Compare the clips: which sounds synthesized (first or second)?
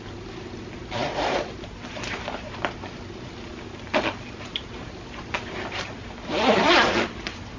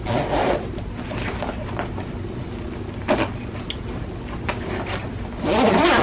first